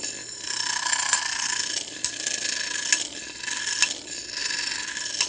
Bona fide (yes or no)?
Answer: yes